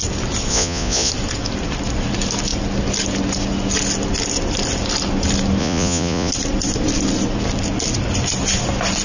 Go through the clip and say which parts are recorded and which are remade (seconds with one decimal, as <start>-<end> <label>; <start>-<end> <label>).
0.0-0.5 recorded; 0.5-1.1 remade; 1.1-5.6 recorded; 5.6-6.3 remade; 6.3-9.0 recorded